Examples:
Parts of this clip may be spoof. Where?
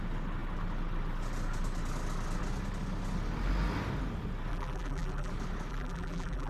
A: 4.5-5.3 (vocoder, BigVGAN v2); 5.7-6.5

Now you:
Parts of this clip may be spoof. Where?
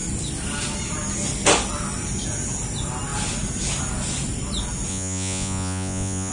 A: 4.9-6.3 (vocoder, Vocos)